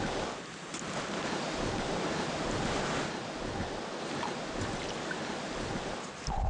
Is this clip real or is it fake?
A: real